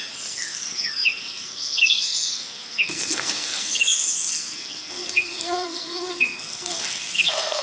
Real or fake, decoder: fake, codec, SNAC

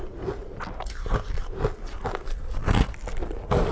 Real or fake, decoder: real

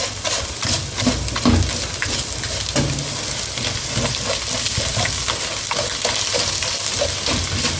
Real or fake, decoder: real